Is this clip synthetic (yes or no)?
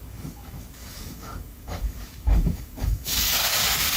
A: yes